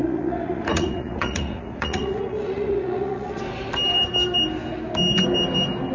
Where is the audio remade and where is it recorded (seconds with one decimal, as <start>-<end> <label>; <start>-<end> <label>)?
0.0-3.4 remade; 3.4-5.9 recorded